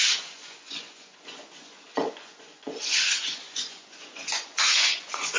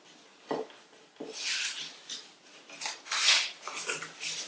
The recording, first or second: second